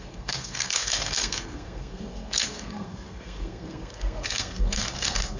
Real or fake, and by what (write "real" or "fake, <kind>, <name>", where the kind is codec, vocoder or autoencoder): fake, codec, SNAC